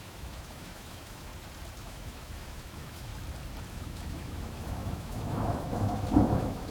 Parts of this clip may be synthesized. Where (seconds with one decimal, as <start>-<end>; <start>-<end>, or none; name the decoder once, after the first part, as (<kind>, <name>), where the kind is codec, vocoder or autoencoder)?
0.0-1.3 (autoencoder, DAC-VAE); 1.8-3.1; 3.7-6.7